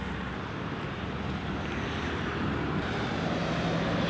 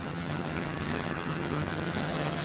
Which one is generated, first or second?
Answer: second